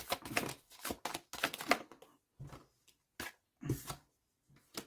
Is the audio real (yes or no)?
yes